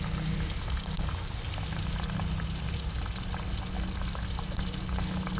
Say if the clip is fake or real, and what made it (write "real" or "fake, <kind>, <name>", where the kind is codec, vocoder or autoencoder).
real